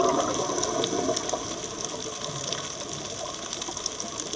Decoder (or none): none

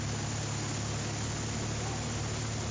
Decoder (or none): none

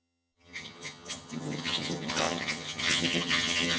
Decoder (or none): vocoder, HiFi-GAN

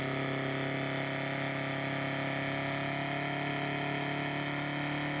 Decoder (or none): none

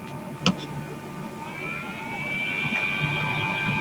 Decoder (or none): none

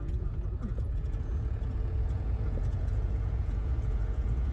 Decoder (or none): vocoder, Vocos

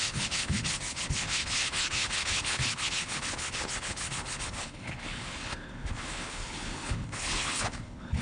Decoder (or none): codec, HILCodec